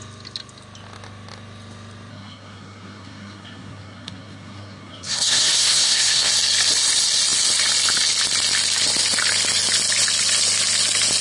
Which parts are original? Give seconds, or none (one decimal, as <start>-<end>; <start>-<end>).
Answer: 0.0-2.1; 6.3-11.2